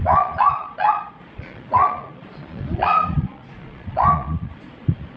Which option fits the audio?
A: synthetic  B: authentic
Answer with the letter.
A